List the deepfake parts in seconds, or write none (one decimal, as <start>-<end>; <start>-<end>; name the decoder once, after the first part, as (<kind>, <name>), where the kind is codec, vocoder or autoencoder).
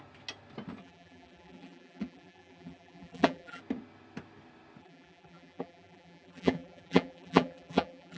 0.8-3.6 (vocoder, BigVGAN v2); 4.8-8.2